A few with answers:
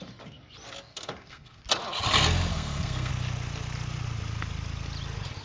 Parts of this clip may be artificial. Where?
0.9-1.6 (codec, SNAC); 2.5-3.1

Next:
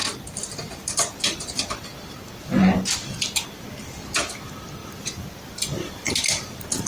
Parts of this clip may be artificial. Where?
0.0-1.7 (vocoder, BigVGAN v2); 4.8-6.9